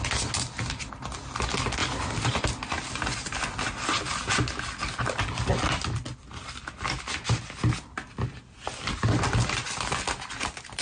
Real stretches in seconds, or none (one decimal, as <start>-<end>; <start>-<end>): 0.0-10.8